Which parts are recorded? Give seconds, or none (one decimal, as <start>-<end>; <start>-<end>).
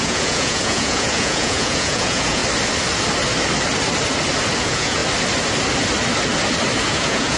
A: 2.4-4.6; 5.0-6.9